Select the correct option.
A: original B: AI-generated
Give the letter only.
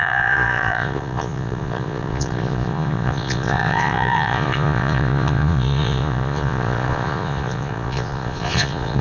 B